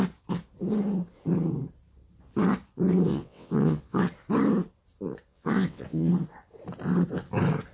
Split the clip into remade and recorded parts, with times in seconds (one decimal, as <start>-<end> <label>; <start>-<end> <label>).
0.0-3.1 recorded; 3.1-4.0 remade; 4.0-5.3 recorded; 5.3-6.1 remade; 6.1-7.7 recorded